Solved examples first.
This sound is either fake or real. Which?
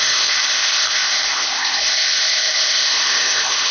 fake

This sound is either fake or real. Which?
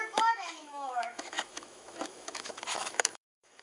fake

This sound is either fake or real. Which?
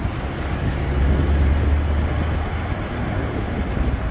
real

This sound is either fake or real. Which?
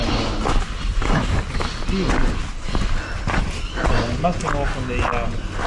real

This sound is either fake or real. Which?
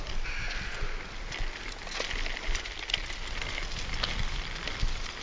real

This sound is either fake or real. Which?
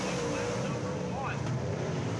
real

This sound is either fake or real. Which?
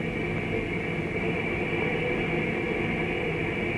real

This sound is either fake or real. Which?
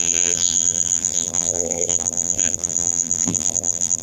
fake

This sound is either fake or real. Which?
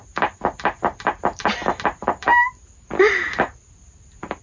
real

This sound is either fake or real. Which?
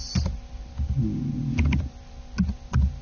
real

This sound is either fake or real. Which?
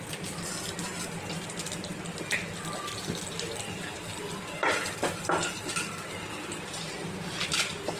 real